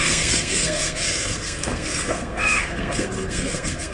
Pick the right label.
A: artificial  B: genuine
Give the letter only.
A